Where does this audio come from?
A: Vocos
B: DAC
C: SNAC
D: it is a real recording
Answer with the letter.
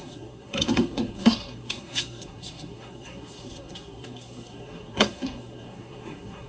C